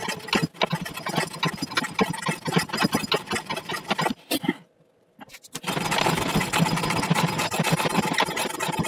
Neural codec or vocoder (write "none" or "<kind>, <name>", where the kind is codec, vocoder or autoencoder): none